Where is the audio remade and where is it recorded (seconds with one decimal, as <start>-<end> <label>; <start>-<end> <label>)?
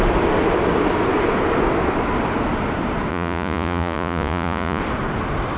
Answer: 0.0-3.1 recorded; 3.1-4.8 remade; 4.8-5.6 recorded